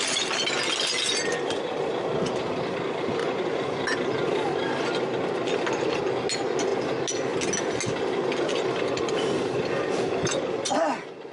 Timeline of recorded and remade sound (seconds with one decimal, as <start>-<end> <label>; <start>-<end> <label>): 0.0-3.2 recorded; 3.2-3.8 remade; 3.8-11.3 recorded

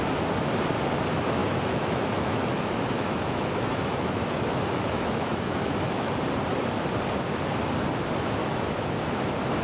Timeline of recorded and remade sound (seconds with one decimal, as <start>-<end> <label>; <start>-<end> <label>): 0.0-1.4 recorded; 1.4-6.1 remade; 6.1-8.4 recorded; 8.4-9.2 remade; 9.2-9.6 recorded

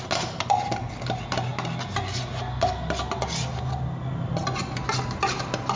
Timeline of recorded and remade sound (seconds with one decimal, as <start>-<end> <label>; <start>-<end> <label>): 0.0-5.8 recorded

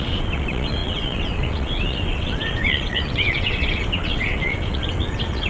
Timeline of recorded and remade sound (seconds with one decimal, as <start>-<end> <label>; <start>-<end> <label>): 0.0-5.5 remade